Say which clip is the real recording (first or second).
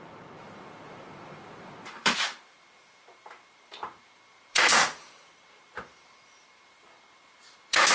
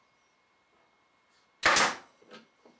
second